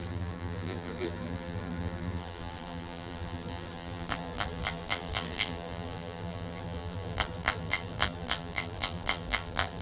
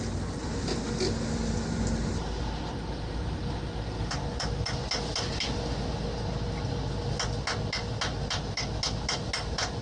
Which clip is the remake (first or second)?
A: first